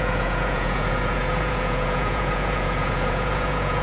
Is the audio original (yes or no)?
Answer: no